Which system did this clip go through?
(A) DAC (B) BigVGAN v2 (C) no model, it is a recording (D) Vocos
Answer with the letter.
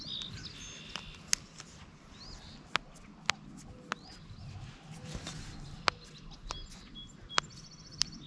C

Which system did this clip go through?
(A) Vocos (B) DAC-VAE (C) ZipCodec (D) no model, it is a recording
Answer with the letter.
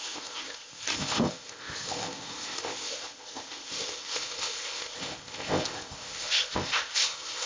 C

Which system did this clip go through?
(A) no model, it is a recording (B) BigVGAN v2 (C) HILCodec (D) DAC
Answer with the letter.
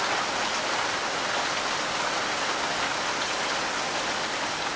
A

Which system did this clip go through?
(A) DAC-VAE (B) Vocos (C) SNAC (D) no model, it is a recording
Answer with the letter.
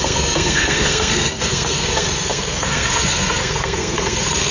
C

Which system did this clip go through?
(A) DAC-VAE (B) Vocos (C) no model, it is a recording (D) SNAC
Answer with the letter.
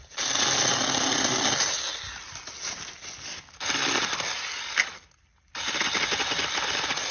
C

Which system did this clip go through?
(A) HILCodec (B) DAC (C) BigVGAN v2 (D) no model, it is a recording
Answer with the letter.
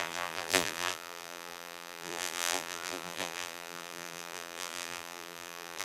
C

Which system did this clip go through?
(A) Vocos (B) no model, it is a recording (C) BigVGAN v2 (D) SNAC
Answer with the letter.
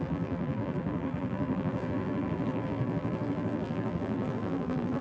C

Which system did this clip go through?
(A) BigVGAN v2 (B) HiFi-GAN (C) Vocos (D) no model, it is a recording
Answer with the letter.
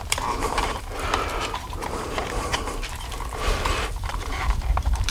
A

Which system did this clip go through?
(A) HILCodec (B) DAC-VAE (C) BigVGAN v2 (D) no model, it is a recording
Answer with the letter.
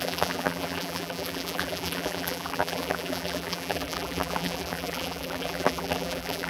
C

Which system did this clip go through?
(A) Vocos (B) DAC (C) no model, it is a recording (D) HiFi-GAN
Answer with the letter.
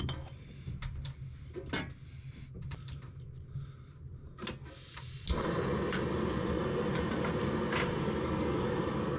C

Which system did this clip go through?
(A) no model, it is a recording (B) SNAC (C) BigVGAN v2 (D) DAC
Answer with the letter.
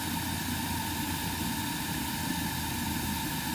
A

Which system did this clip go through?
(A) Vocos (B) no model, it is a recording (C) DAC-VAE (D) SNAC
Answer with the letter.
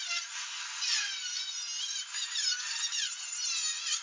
B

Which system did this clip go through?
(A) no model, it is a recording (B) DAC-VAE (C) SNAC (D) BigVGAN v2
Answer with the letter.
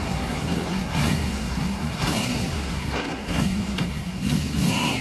C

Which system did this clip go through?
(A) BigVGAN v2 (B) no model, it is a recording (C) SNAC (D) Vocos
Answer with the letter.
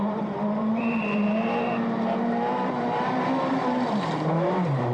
A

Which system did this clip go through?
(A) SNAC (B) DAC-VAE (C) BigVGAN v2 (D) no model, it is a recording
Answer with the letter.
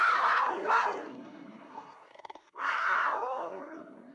A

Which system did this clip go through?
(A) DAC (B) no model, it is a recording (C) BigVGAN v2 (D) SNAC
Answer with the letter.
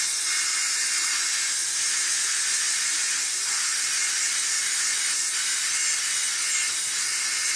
B